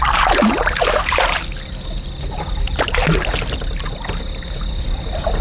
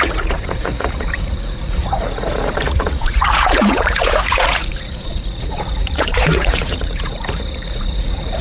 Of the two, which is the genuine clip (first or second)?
first